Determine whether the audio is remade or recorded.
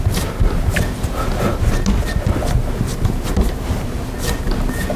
recorded